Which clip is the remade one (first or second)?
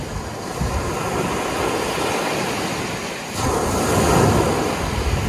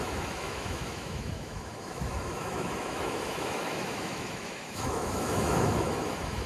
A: second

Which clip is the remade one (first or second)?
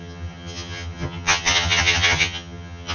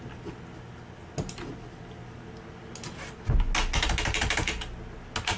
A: first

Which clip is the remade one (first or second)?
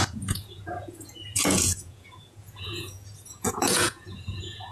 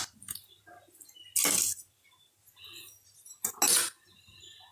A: first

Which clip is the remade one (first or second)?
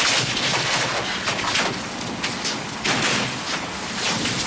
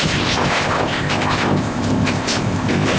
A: second